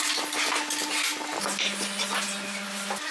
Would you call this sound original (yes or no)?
yes